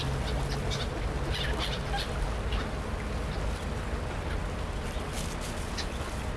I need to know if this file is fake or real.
real